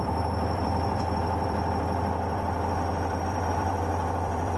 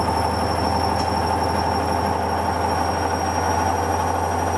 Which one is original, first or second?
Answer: second